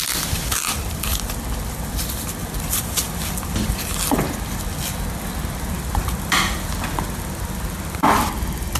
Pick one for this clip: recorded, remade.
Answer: recorded